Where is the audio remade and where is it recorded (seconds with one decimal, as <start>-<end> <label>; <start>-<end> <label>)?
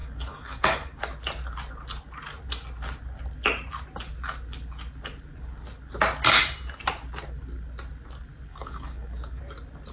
0.0-1.0 remade; 1.0-8.5 recorded; 8.5-9.4 remade; 9.4-9.9 recorded